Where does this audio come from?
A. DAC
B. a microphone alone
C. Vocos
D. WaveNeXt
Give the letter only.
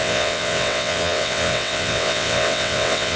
D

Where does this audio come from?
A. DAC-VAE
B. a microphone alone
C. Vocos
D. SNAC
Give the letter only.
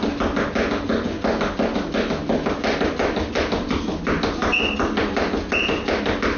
B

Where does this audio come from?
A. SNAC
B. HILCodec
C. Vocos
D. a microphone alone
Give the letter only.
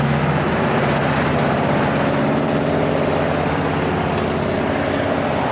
D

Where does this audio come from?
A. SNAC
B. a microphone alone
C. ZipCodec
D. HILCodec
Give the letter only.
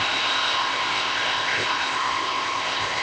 C